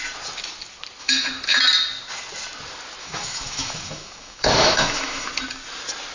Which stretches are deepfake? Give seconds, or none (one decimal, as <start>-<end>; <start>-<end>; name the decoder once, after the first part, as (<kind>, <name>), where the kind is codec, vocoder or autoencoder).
1.0-1.6 (autoencoder, DAC-VAE); 3.0-5.3